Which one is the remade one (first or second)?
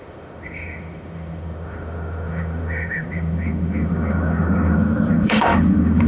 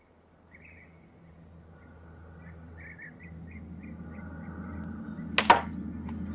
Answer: first